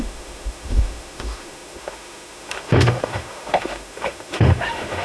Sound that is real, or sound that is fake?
fake